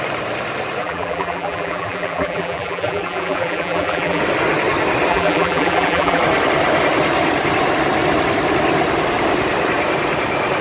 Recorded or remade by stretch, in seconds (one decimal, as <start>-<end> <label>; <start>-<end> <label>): 0.0-0.8 recorded; 0.8-4.2 remade; 4.2-5.1 recorded; 5.1-6.2 remade; 6.2-10.6 recorded